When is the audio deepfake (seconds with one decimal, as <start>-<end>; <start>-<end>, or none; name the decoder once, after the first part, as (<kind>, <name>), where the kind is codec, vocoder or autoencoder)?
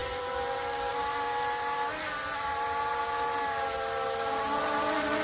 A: none